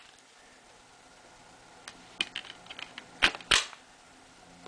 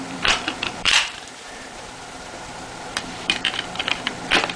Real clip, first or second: first